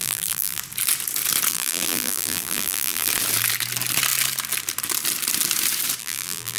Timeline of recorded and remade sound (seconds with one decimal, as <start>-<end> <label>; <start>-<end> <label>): 0.0-0.6 remade; 0.6-1.5 recorded; 1.5-3.1 remade; 3.1-6.0 recorded; 6.0-6.6 remade